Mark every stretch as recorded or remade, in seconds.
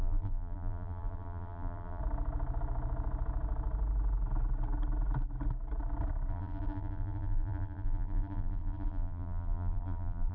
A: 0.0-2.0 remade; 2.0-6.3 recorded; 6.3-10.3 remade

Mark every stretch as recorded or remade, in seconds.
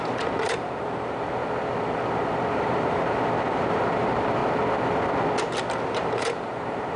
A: 0.0-1.4 remade; 1.4-2.5 recorded; 2.5-4.4 remade; 4.4-5.9 recorded; 5.9-7.0 remade